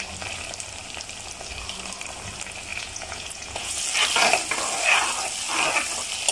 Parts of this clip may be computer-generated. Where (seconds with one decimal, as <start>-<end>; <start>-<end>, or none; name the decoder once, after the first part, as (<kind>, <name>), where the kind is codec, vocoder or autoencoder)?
2.7-3.8 (vocoder, Vocos)